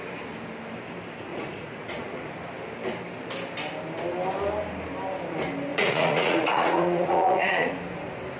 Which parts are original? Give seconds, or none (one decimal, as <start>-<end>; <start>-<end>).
0.0-1.3; 2.3-5.7; 7.7-8.4